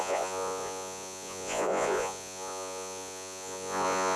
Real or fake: fake